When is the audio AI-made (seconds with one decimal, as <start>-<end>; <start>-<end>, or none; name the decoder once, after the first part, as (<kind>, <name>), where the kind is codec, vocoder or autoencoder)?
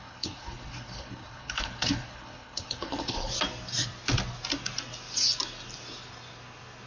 0.0-3.3 (codec, HILCodec)